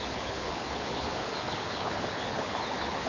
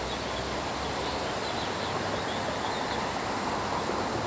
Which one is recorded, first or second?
second